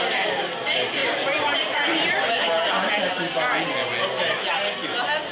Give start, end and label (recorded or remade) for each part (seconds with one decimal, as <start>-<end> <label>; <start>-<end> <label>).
0.0-1.0 recorded; 1.0-2.4 remade; 2.4-5.3 recorded